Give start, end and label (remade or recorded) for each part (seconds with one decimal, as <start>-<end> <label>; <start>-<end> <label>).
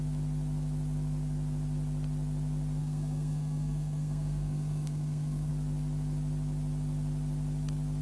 0.0-2.8 recorded; 2.8-5.5 remade; 5.5-8.0 recorded